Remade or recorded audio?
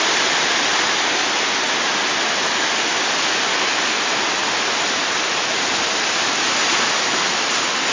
recorded